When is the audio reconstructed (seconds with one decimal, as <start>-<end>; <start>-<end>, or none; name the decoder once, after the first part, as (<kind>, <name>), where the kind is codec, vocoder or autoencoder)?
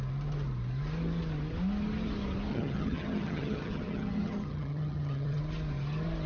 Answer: 2.5-5.4 (vocoder, HiFi-GAN)